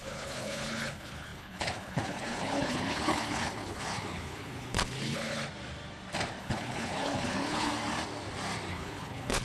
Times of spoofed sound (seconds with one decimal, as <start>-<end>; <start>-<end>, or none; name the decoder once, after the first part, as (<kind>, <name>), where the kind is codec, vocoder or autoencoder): 0.0-5.4 (codec, HILCodec); 6.4-7.7; 8.7-9.4